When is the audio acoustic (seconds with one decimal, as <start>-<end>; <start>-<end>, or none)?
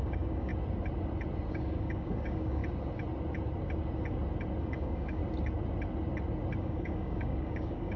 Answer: 0.5-1.5; 2.6-4.6; 5.2-6.6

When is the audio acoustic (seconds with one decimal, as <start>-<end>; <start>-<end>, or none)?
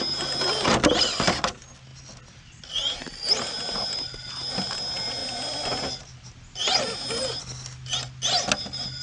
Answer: 0.0-9.0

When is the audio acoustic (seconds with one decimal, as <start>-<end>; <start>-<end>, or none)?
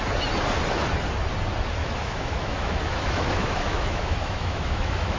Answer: 0.0-1.8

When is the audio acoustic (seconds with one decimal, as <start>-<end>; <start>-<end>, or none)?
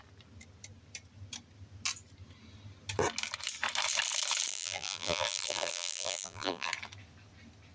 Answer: 0.0-4.5; 6.7-7.7